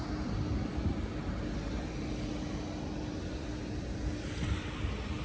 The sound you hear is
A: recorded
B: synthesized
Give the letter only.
A